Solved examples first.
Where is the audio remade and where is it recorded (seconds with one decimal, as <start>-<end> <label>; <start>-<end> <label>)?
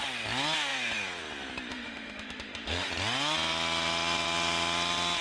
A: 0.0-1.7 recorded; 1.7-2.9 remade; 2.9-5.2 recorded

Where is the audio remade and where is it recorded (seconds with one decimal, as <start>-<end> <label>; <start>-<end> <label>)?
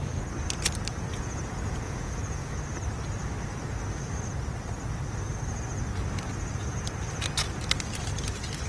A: 0.0-1.1 recorded; 1.1-2.5 remade; 2.5-8.7 recorded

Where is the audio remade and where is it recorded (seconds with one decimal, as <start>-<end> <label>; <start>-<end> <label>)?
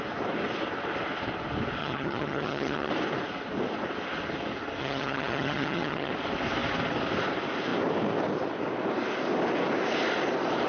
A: 0.0-1.8 recorded; 1.8-2.9 remade; 2.9-4.8 recorded; 4.8-6.1 remade; 6.1-10.7 recorded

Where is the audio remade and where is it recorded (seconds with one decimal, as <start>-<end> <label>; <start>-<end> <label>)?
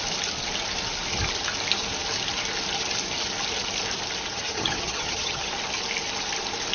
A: 0.0-4.3 recorded; 4.3-5.5 remade; 5.5-6.7 recorded